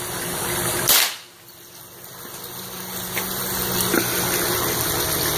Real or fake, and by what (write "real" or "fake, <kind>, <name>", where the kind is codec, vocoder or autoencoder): real